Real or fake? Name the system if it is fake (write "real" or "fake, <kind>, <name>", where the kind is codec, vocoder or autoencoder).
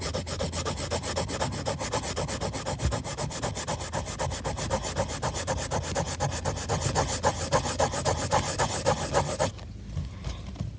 real